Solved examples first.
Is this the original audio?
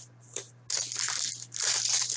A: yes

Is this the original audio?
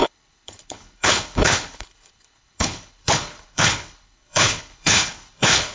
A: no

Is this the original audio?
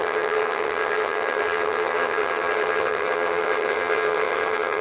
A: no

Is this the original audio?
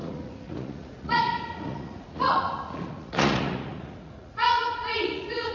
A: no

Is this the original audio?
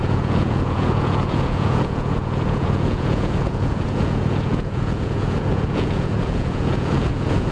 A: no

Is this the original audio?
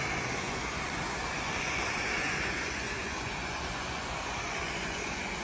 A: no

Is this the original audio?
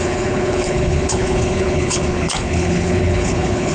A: no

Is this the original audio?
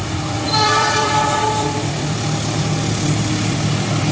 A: no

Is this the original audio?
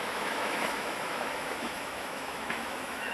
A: no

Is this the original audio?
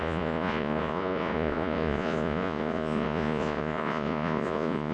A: no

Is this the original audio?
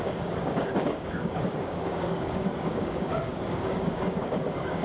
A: no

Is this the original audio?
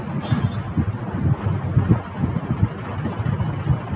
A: yes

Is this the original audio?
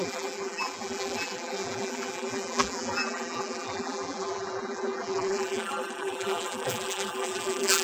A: no